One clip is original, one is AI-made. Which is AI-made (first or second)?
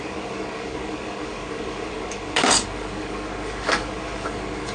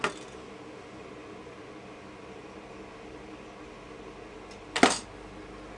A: first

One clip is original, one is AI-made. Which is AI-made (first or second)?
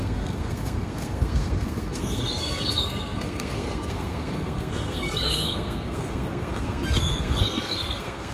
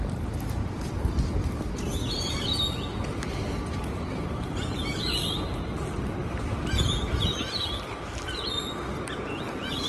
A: first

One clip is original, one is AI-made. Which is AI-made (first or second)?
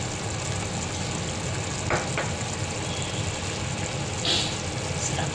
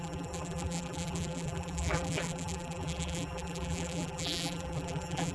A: second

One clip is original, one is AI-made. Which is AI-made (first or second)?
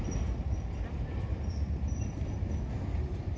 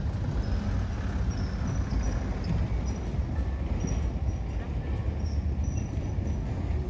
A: first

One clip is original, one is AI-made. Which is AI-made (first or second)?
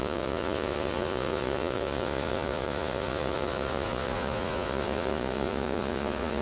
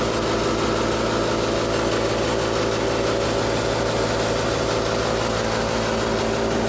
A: first